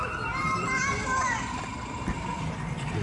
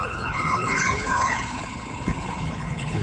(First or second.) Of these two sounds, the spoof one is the second